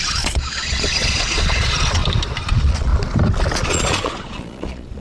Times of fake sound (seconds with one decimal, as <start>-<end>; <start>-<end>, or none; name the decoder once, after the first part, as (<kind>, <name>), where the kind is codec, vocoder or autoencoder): 0.0-2.0 (vocoder, Vocos); 2.5-2.9; 3.6-5.0